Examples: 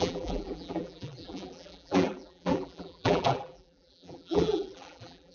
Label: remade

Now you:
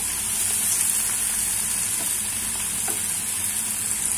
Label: recorded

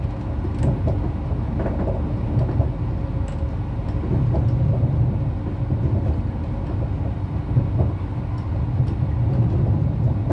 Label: recorded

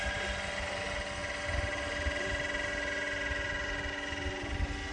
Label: recorded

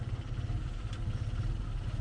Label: recorded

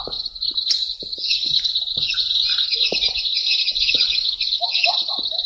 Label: recorded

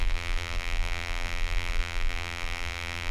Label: remade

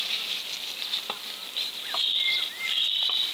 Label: recorded